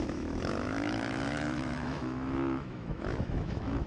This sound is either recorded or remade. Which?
remade